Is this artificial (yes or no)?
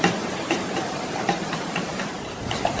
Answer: yes